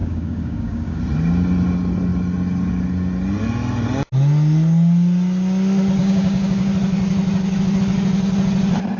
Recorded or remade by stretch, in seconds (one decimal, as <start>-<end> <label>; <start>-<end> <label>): 0.0-1.0 remade; 1.0-6.0 recorded; 6.0-6.7 remade; 6.7-9.0 recorded